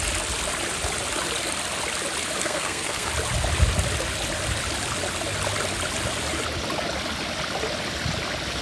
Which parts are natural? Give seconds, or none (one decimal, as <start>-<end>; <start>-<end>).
0.0-2.4; 3.1-8.6